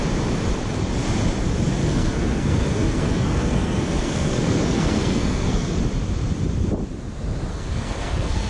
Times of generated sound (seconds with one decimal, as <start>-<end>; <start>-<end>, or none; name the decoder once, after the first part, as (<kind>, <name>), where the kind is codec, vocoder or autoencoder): 1.8-5.8 (codec, SNAC); 7.5-8.5